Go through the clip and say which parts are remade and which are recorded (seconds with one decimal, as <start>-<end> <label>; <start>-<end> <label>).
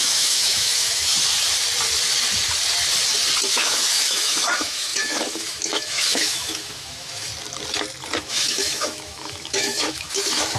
0.0-1.1 remade; 1.1-3.5 recorded; 3.5-7.3 remade; 7.3-8.2 recorded; 8.2-10.6 remade